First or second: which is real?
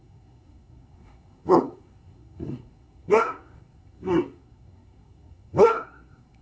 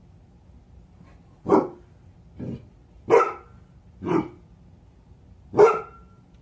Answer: second